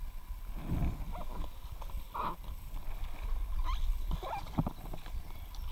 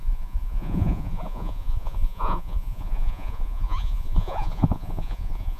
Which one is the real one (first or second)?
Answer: first